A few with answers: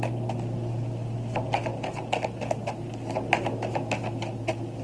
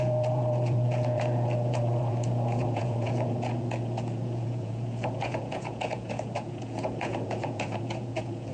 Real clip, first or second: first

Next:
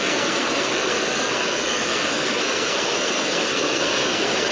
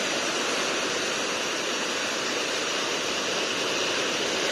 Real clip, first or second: second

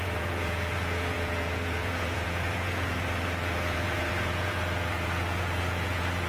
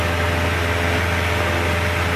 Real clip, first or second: second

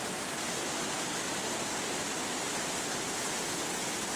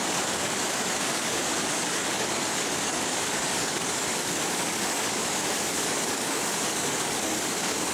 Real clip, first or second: first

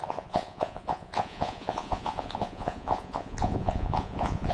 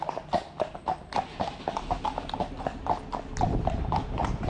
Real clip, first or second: second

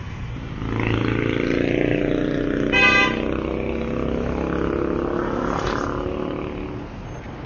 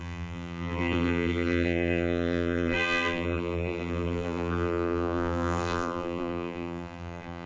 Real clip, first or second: first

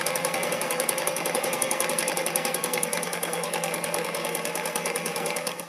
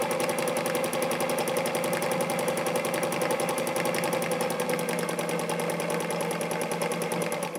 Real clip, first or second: second